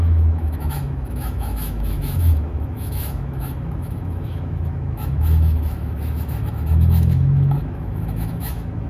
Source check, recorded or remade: remade